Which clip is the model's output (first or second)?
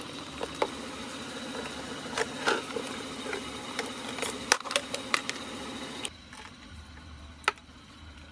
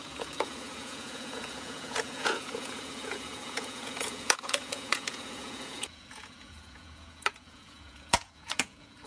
second